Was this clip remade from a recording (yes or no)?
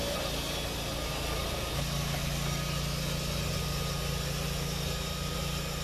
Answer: no